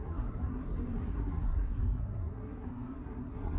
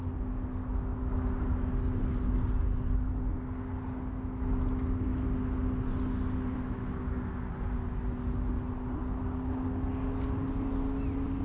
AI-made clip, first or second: first